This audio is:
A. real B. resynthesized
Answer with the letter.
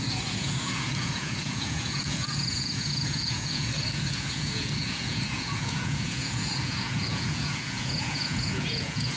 B